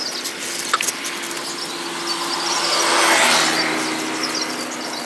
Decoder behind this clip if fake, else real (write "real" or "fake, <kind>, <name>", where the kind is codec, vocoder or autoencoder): real